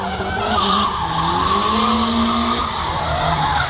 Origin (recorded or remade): recorded